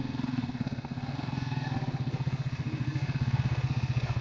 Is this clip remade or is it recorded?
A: remade